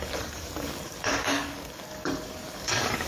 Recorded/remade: remade